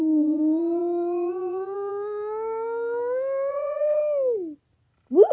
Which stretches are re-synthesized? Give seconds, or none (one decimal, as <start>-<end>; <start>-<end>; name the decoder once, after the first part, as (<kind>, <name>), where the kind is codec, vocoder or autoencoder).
0.0-1.9 (vocoder, Vocos); 3.5-4.0